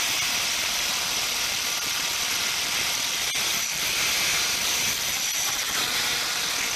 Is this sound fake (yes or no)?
no